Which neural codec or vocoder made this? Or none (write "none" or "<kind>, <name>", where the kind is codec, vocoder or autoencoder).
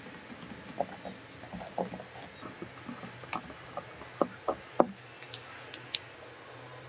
none